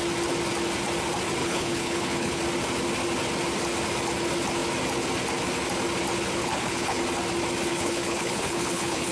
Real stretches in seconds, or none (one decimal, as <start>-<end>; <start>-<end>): 0.0-1.4; 2.4-6.4; 7.0-7.7